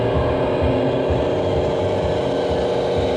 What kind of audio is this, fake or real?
real